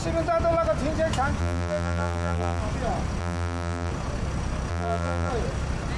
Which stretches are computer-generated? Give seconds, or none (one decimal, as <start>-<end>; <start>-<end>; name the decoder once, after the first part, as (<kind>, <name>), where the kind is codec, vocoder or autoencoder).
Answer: 1.4-2.6 (vocoder, BigVGAN v2); 3.2-3.9; 4.7-5.3